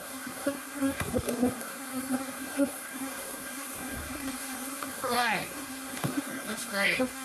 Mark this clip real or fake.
fake